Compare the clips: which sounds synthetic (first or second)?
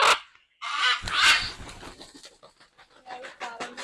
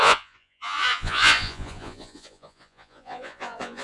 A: second